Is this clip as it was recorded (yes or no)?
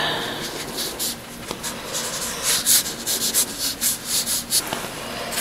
yes